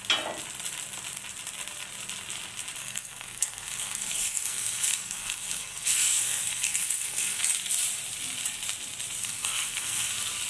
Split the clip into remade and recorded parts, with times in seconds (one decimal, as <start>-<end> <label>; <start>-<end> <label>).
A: 0.0-2.8 recorded; 2.8-7.4 remade; 7.4-9.2 recorded; 9.2-10.1 remade; 10.1-10.5 recorded